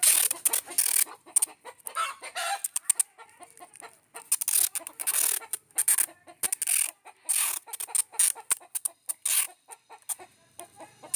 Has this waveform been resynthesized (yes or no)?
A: no